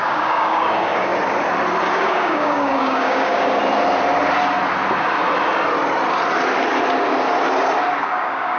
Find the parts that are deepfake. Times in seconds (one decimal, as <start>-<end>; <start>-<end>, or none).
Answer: 0.0-1.1; 1.9-3.6; 8.0-8.6